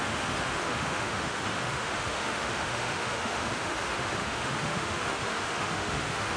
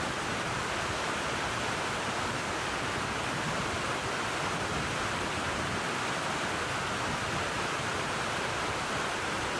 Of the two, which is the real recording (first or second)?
second